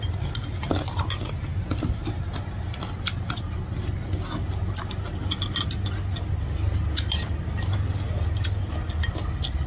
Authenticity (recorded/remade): recorded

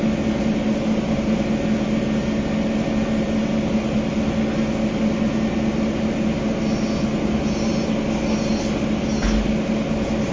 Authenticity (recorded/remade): recorded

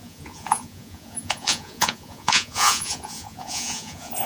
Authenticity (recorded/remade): remade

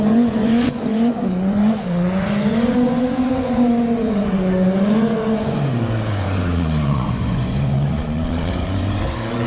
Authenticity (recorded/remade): remade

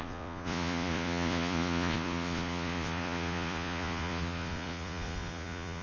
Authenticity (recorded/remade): remade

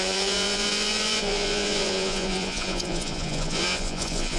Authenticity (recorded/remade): remade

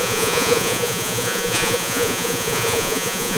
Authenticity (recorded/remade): remade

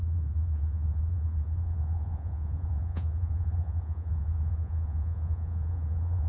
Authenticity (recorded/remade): remade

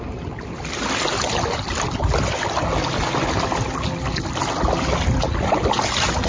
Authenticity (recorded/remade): recorded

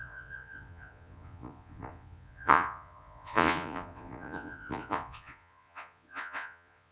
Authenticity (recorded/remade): remade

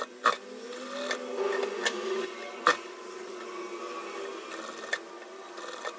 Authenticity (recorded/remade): recorded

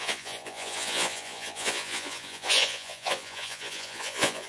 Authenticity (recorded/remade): remade